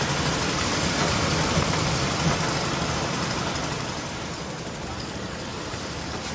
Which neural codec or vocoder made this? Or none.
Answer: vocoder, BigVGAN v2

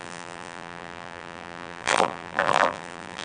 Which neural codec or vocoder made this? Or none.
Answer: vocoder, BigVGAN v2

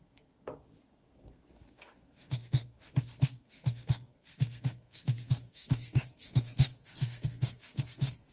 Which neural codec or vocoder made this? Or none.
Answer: codec, SNAC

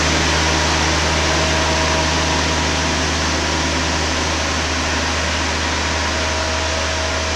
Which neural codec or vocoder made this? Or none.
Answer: none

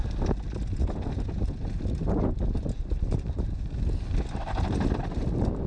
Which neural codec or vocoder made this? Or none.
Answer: none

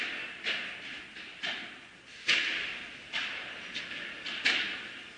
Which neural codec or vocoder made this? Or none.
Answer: none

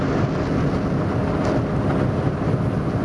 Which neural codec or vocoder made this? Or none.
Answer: none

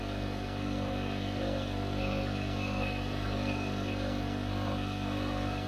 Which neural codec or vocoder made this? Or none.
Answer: codec, SNAC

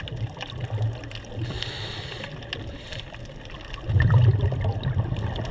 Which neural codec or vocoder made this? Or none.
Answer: none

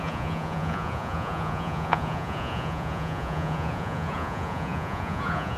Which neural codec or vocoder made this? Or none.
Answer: vocoder, Vocos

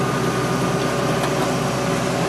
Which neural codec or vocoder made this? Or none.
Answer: none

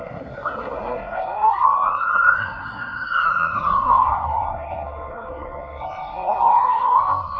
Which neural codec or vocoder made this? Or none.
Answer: codec, SNAC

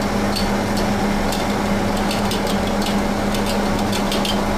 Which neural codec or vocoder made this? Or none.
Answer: none